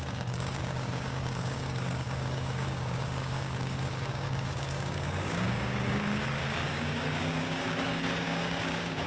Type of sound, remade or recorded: remade